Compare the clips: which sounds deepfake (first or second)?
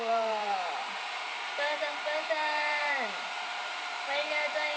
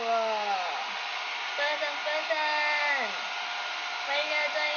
first